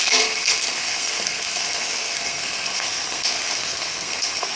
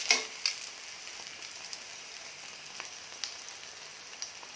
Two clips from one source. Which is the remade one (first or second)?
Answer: first